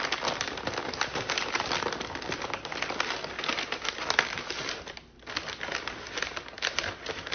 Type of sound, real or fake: real